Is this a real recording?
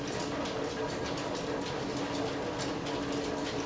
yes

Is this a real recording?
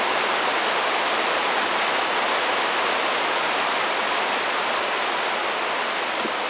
yes